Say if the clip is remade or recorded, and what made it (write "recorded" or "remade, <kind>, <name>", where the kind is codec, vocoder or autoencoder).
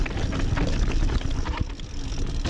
recorded